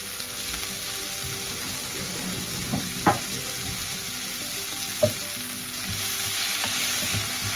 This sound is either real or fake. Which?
real